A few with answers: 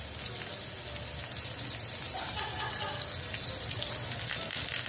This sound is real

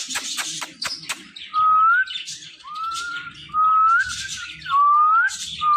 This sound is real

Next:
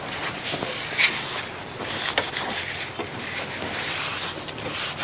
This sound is fake